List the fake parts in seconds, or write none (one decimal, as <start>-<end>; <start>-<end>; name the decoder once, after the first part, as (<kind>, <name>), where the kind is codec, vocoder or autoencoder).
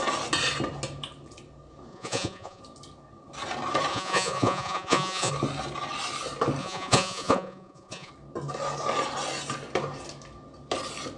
1.9-2.6 (vocoder, Vocos); 3.9-5.3; 6.6-8.1